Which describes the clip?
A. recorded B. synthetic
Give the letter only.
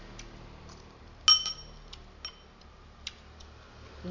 A